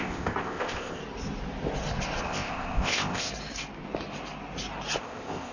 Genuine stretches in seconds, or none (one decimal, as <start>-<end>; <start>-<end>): 1.0-2.2; 3.3-5.0